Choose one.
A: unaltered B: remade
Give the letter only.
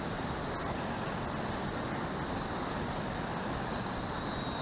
A